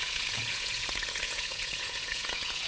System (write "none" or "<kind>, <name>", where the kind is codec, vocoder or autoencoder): vocoder, Vocos